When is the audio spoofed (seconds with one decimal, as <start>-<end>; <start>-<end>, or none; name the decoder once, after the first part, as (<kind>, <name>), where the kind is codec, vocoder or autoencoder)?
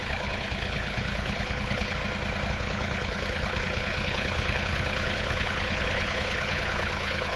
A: 0.0-2.0 (codec, HILCodec); 2.5-7.4